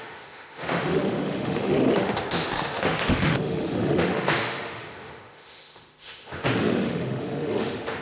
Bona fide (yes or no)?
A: no